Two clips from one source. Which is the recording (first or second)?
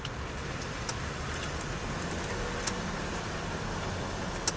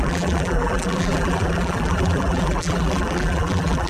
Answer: first